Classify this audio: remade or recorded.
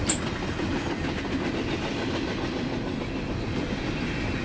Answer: recorded